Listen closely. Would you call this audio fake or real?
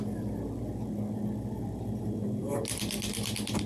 real